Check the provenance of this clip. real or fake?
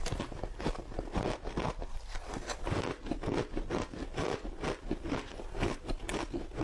real